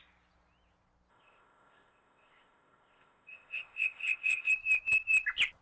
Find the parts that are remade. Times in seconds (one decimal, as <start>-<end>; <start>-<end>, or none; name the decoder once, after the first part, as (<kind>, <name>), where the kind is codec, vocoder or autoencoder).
1.1-4.5 (codec, ZipCodec)

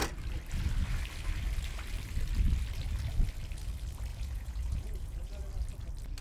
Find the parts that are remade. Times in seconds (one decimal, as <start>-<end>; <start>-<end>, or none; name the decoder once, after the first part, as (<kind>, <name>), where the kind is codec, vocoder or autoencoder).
4.1-5.4 (vocoder, Vocos)